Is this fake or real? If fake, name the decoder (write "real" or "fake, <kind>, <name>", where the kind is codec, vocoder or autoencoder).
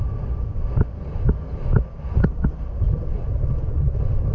real